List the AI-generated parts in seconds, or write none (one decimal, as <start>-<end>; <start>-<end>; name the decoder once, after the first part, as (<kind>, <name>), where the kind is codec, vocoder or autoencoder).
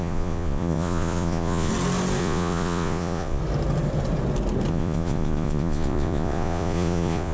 0.0-1.7 (vocoder, Vocos); 2.2-3.4; 4.7-7.3